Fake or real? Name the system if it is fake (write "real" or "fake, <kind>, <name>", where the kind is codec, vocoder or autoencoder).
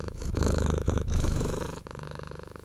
fake, autoencoder, DAC-VAE